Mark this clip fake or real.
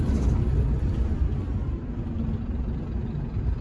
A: real